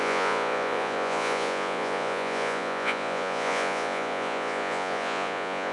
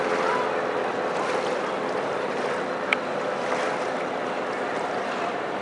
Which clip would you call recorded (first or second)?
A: second